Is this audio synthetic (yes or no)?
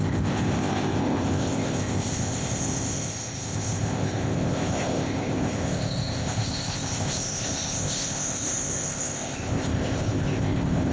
yes